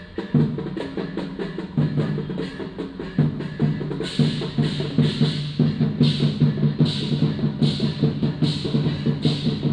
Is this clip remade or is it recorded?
recorded